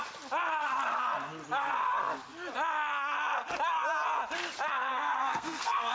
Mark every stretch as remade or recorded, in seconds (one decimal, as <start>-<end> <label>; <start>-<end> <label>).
0.0-4.9 recorded; 4.9-5.9 remade